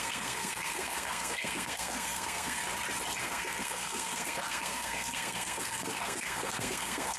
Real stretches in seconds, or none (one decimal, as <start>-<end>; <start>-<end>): 2.6-3.2